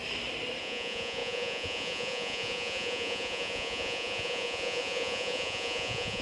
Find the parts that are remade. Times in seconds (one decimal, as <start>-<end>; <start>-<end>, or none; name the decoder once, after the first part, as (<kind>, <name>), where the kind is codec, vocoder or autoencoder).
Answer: 0.6-6.2 (vocoder, Vocos)